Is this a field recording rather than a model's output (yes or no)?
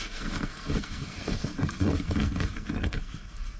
no